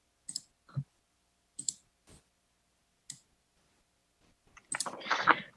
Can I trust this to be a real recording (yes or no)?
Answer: yes